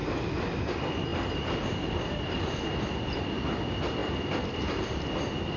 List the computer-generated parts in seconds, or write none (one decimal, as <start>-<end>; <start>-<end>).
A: 0.0-0.6; 1.1-3.2; 4.0-4.7